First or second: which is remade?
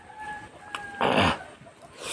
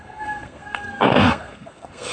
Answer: second